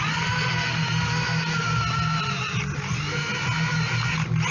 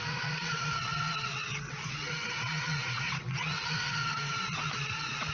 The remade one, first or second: second